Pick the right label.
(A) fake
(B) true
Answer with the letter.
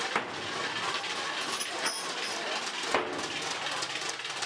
B